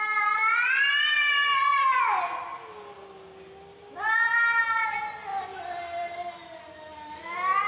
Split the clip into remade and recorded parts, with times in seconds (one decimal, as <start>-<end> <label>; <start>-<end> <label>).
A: 0.0-5.3 recorded; 5.3-7.7 remade